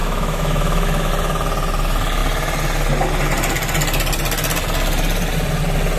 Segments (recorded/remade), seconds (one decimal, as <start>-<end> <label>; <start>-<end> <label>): 0.0-1.1 remade; 1.1-6.0 recorded